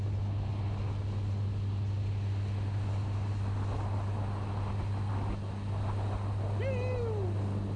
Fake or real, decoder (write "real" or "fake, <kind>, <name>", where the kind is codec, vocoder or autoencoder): real